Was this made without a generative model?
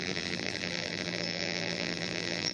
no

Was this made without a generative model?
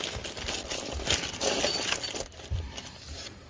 yes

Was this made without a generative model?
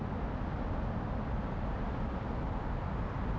yes